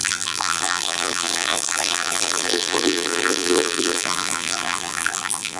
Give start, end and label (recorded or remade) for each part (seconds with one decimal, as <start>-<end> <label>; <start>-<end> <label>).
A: 0.0-5.6 remade